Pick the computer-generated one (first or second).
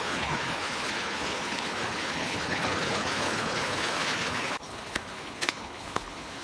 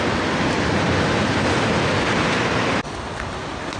first